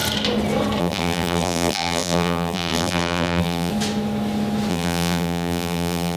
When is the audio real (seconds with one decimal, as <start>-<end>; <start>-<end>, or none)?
0.0-0.8; 3.7-4.7

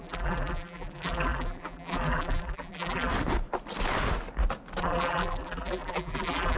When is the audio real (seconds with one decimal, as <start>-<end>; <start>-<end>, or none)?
3.1-4.8

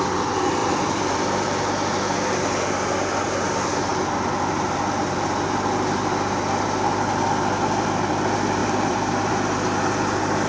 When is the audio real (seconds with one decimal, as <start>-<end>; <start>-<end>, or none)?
0.0-0.6; 1.6-8.6; 9.3-10.5

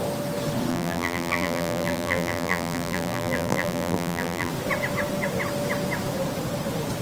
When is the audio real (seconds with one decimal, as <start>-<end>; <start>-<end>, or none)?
0.0-0.7; 4.5-7.0

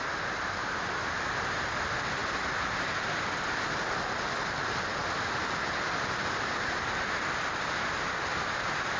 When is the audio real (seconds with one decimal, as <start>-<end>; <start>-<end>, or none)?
0.0-9.0

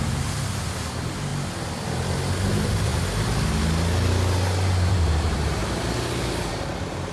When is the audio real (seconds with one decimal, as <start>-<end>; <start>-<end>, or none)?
1.3-2.5; 2.9-4.9; 5.6-6.5